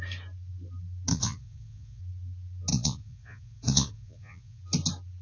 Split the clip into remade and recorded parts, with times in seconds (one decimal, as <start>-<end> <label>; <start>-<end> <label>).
0.0-1.1 recorded; 1.1-2.0 remade; 2.0-2.7 recorded; 2.7-4.6 remade; 4.6-5.2 recorded